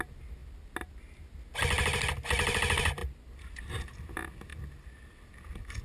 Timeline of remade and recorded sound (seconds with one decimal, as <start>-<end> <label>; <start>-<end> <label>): 0.0-5.8 recorded